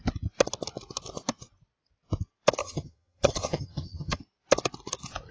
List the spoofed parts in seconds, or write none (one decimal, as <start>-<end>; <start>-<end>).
2.6-4.2